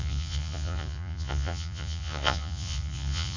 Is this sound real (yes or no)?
no